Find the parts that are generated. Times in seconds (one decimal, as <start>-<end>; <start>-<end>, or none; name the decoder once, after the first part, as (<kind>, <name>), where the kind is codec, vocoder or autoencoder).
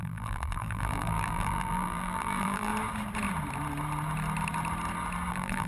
0.0-2.7 (vocoder, BigVGAN v2); 5.3-5.7